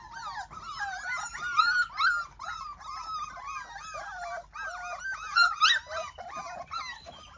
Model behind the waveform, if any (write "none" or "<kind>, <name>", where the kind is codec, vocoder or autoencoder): none